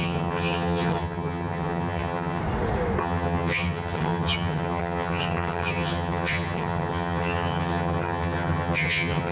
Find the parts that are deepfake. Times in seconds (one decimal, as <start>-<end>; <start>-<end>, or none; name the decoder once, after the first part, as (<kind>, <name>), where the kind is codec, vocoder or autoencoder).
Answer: 0.0-2.4 (vocoder, HiFi-GAN); 3.0-9.3